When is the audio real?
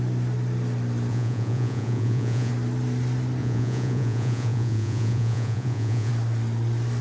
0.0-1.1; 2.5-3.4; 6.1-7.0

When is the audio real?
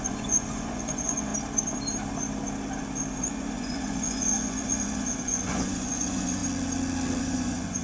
1.3-3.2; 6.4-7.2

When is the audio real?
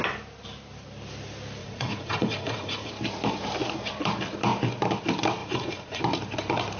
0.0-1.6; 2.9-5.4; 6.0-6.8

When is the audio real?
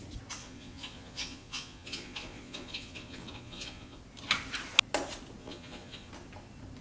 0.0-0.4; 4.0-5.4; 6.1-6.8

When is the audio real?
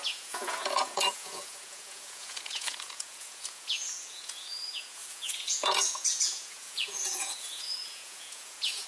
none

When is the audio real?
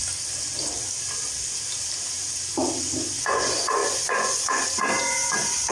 0.0-3.1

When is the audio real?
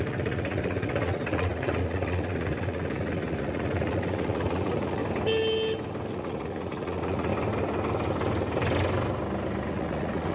5.0-6.1; 7.3-9.7